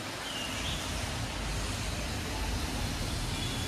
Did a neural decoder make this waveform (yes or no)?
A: no